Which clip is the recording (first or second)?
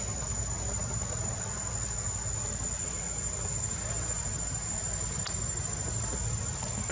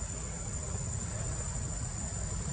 first